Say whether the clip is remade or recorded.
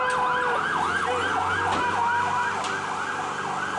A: recorded